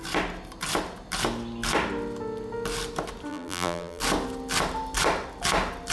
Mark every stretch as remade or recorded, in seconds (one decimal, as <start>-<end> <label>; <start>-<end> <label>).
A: 0.0-3.3 recorded; 3.3-4.0 remade; 4.0-5.9 recorded